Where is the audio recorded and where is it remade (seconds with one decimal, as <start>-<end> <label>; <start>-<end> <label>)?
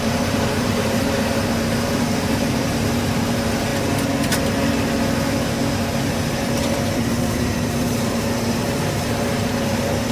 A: 0.0-3.7 remade; 3.7-6.4 recorded; 6.4-10.1 remade